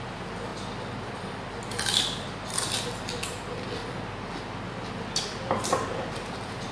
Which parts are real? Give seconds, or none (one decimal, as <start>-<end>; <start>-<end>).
3.8-4.9